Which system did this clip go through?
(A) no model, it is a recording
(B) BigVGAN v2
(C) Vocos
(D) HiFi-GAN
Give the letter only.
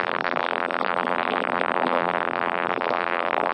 B